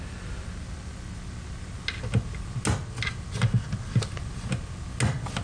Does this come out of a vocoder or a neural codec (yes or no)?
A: no